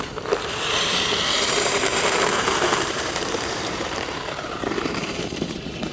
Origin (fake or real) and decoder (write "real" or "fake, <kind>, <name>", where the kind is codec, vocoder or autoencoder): fake, vocoder, BigVGAN v2